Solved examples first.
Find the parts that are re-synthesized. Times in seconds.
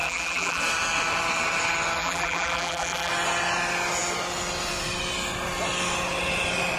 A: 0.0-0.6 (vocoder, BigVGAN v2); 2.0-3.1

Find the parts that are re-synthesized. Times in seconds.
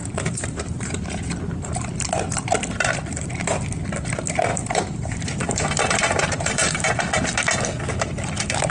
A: 0.0-2.9 (vocoder, BigVGAN v2); 4.5-7.0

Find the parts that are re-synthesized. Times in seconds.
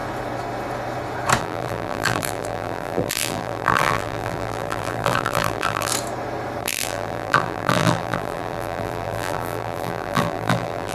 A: 1.4-5.9 (vocoder, BigVGAN v2); 6.6-10.9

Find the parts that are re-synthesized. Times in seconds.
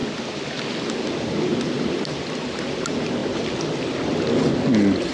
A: 1.2-3.2 (vocoder, BigVGAN v2)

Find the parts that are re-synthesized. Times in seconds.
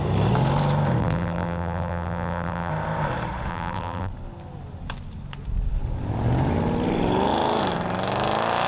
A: 1.0-2.7 (vocoder, BigVGAN v2); 3.5-4.1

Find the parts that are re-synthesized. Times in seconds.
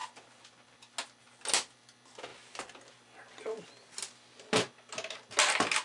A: none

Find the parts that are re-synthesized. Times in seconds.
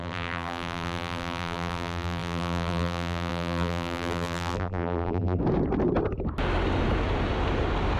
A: 0.0-5.4 (vocoder, BigVGAN v2)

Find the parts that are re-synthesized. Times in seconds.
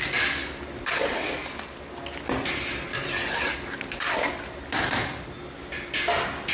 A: none